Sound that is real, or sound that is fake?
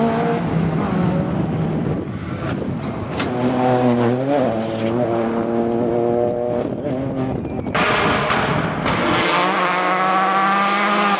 real